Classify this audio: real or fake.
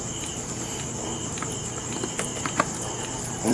real